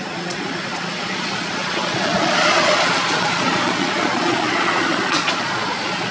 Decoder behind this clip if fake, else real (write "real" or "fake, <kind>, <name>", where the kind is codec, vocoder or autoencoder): fake, vocoder, Vocos